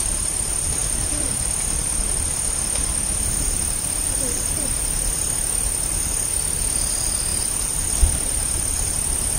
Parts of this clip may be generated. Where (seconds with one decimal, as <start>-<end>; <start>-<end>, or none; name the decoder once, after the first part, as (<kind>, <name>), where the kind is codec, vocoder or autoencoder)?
0.8-2.1 (vocoder, BigVGAN v2); 7.3-8.9